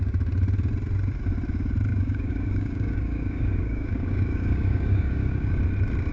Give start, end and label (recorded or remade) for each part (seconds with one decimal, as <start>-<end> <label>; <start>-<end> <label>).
0.0-1.9 recorded; 1.9-5.6 remade; 5.6-6.1 recorded